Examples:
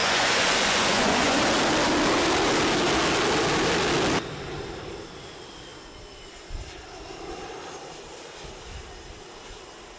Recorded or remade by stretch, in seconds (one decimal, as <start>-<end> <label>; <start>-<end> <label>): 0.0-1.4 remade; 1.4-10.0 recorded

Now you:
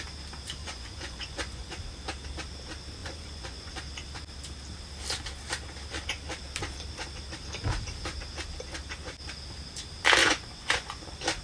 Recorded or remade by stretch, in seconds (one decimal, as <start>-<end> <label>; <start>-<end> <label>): 0.0-0.6 recorded; 0.6-1.7 remade; 1.7-3.0 recorded; 3.0-3.7 remade; 3.7-10.2 recorded; 10.2-11.0 remade; 11.0-11.4 recorded

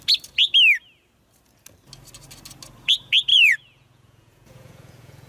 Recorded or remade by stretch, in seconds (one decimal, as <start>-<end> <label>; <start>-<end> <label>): 0.0-3.3 recorded; 3.3-5.3 remade

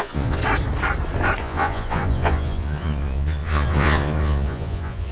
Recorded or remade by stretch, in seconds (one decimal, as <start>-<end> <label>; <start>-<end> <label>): 0.0-0.4 remade; 0.4-1.4 recorded; 1.4-5.1 remade